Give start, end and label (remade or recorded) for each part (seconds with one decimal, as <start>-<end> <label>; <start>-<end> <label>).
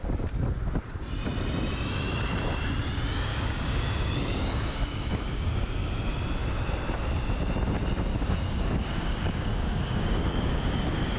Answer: 0.0-3.3 recorded; 3.3-5.9 remade; 5.9-8.1 recorded; 8.1-11.2 remade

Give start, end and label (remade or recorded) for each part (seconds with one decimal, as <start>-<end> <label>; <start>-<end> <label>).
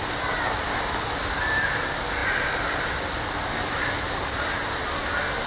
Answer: 0.0-5.5 recorded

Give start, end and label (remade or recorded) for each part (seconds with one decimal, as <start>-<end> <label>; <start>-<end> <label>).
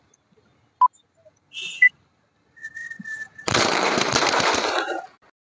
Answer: 0.0-1.2 recorded; 1.2-2.2 remade; 2.2-2.8 recorded; 2.8-5.0 remade; 5.0-5.5 recorded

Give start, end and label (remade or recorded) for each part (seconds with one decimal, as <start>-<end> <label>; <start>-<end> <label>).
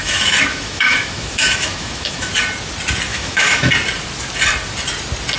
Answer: 0.0-2.3 remade; 2.3-3.1 recorded; 3.1-3.7 remade; 3.7-5.4 recorded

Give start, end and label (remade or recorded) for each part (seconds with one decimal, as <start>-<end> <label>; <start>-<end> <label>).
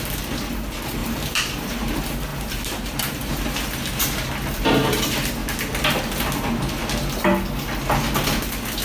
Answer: 0.0-1.0 recorded; 1.0-1.9 remade; 1.9-2.3 recorded; 2.3-3.0 remade; 3.0-8.8 recorded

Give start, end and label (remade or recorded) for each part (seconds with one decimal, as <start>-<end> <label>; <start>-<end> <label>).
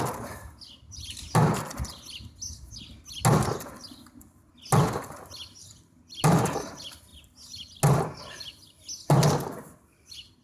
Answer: 0.0-10.4 recorded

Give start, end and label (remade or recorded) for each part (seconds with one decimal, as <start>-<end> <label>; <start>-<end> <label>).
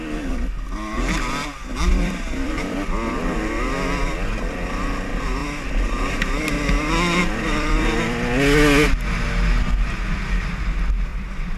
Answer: 0.0-1.7 recorded; 1.7-2.7 remade; 2.7-7.2 recorded; 7.2-7.7 remade; 7.7-11.1 recorded; 11.1-11.6 remade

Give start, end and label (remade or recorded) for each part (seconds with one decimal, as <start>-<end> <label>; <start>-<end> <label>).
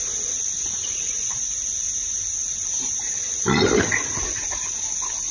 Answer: 0.0-5.3 recorded